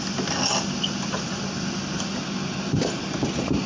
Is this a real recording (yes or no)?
yes